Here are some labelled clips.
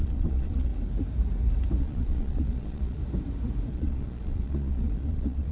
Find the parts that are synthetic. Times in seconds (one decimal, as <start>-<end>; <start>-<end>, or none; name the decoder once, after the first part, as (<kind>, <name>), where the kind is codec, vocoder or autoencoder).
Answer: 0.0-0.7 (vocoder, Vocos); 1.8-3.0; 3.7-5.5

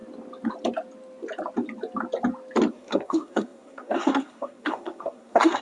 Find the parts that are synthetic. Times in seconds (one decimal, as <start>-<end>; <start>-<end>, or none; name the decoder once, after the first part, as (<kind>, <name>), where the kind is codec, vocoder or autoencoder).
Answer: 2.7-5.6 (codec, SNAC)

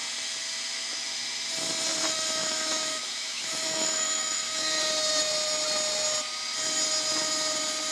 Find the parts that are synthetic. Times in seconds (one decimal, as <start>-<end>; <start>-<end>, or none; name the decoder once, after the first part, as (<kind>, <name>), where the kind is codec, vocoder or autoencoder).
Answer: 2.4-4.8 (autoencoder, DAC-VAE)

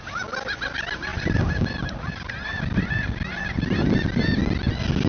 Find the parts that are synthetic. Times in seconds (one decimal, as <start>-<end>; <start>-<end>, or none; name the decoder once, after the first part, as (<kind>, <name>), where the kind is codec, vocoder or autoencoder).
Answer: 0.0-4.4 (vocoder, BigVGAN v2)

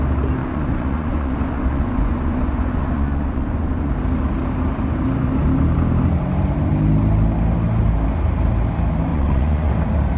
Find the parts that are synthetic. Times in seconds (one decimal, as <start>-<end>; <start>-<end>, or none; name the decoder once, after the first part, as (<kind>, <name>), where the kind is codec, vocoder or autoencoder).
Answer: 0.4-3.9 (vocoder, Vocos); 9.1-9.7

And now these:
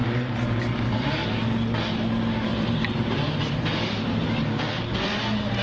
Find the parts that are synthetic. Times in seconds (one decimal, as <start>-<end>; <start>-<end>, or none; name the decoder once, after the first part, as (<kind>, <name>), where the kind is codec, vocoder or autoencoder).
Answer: 2.5-4.7 (vocoder, BigVGAN v2)

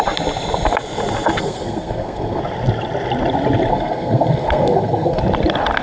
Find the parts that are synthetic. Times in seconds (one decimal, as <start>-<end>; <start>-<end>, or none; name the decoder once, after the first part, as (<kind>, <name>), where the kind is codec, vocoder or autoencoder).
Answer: 1.4-2.4 (codec, SNAC); 3.7-5.2

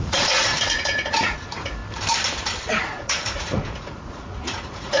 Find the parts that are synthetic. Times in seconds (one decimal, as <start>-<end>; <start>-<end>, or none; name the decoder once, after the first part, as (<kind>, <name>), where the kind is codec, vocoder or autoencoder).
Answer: 0.0-1.8 (vocoder, Vocos); 2.8-5.0